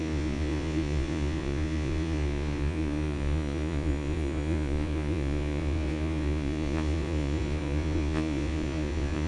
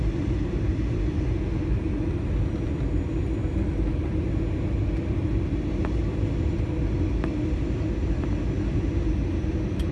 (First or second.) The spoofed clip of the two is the first